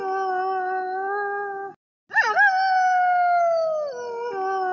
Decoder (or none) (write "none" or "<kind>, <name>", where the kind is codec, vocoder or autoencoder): none